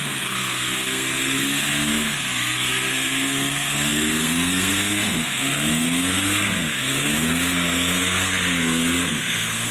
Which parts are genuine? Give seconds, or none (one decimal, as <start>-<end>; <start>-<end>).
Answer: none